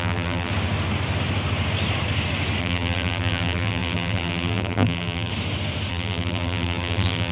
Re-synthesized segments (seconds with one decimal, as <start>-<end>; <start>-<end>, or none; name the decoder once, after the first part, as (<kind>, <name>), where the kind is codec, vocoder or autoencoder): 0.0-0.5 (vocoder, BigVGAN v2); 2.6-5.3; 5.9-7.3